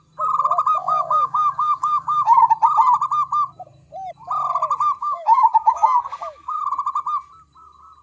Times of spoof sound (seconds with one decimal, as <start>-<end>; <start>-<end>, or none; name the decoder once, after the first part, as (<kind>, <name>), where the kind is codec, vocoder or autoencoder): 0.8-2.5 (codec, DAC); 5.0-6.6